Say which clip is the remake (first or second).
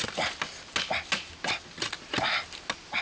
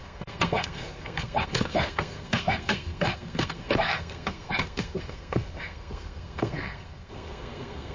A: second